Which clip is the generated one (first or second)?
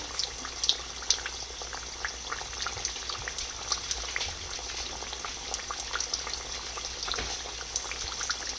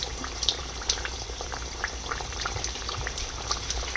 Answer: second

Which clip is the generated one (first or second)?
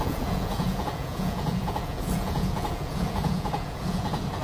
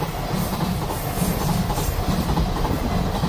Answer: first